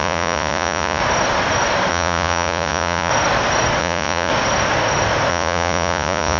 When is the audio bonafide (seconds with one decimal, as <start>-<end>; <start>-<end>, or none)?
1.0-1.9; 3.1-3.8; 4.3-5.3